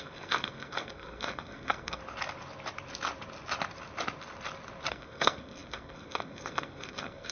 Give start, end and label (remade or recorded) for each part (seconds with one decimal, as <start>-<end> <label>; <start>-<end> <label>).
0.0-2.0 remade; 2.0-4.9 recorded; 4.9-7.3 remade